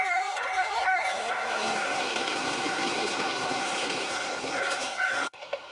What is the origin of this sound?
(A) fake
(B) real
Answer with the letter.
A